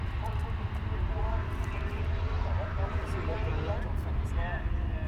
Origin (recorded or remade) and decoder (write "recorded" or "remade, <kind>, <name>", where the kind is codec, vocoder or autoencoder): remade, vocoder, BigVGAN v2